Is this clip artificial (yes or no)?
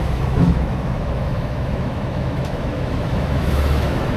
yes